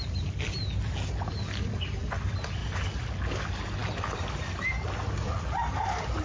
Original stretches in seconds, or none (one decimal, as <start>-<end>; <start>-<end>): 0.0-6.2